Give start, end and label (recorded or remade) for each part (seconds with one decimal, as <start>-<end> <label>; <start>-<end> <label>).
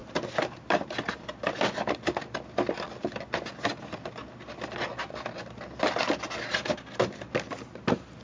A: 0.0-8.2 recorded